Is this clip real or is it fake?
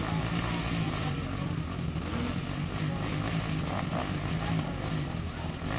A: real